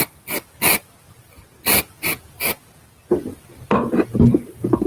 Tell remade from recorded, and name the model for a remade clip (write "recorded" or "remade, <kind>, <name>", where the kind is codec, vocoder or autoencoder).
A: recorded